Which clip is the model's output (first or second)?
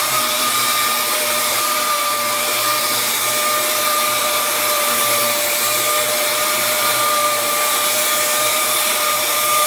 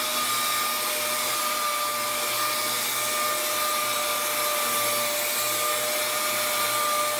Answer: first